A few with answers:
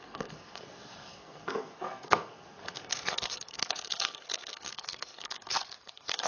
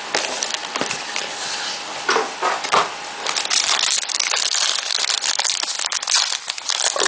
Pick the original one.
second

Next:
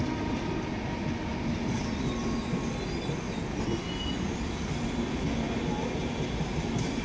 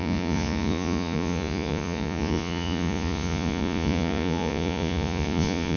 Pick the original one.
first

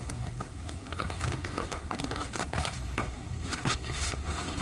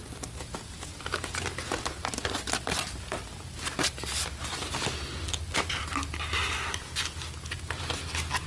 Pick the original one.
second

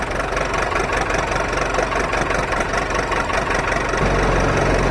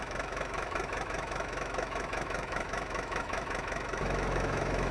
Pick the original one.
first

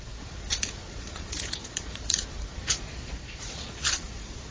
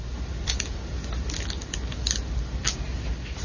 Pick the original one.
second